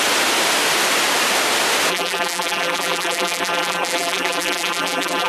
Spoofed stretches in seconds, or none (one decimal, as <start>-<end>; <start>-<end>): 1.9-5.3

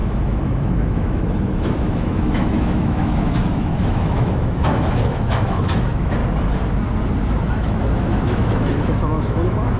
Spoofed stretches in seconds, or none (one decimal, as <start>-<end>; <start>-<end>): 0.0-6.2; 7.5-9.8

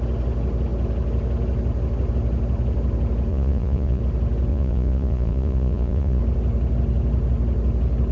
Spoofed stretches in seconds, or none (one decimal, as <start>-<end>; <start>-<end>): 3.3-4.0; 4.5-6.2

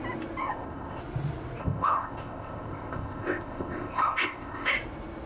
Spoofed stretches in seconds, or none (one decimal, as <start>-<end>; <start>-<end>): 0.4-1.0; 1.6-4.7

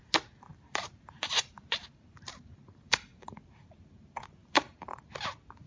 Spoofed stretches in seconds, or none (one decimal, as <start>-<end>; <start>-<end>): 0.5-3.9; 4.4-5.1